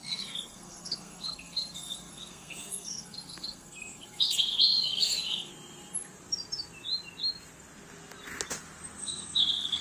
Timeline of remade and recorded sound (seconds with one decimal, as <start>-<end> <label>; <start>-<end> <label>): 0.0-5.5 remade; 5.5-9.0 recorded; 9.0-9.8 remade